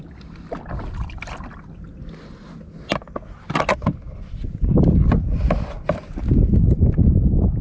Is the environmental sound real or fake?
real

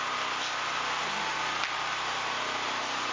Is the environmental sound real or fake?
real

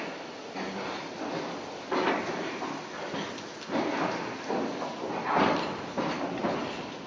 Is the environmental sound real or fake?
real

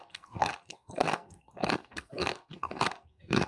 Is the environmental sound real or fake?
fake